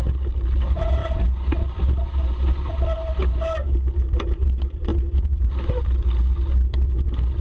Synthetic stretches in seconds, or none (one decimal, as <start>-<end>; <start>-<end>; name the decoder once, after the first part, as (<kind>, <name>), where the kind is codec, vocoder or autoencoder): 4.9-5.5 (vocoder, Vocos)